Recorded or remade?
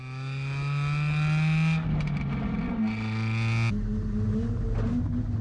recorded